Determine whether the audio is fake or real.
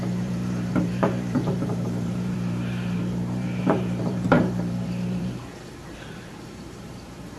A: fake